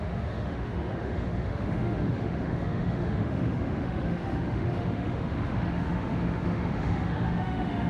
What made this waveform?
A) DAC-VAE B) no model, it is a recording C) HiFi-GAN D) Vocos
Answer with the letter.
A